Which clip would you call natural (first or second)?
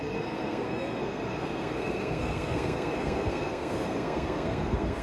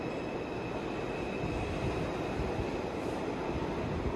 second